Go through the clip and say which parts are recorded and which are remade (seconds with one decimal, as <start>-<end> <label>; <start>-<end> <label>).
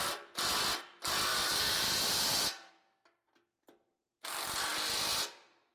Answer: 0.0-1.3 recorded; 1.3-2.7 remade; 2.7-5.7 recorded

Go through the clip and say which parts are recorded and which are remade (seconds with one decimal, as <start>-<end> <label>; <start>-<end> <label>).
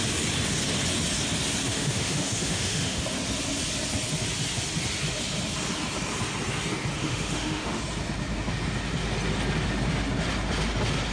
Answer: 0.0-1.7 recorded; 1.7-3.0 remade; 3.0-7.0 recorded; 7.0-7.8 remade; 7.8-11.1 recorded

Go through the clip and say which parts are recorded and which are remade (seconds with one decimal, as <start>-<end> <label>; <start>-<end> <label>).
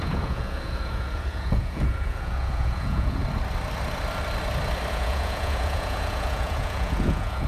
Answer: 0.0-3.2 remade; 3.2-4.9 recorded; 4.9-7.5 remade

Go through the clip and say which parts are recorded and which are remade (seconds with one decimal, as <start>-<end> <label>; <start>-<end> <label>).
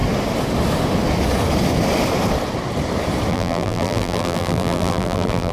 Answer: 0.0-3.3 recorded; 3.3-5.5 remade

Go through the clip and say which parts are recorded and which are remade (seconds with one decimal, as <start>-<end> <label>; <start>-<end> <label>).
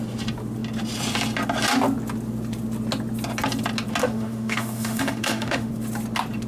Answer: 0.0-4.0 recorded; 4.0-5.7 remade; 5.7-6.5 recorded